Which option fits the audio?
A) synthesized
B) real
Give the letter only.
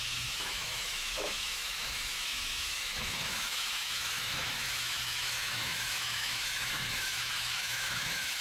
A